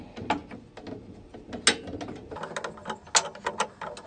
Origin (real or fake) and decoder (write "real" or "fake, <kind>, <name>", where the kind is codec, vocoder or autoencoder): real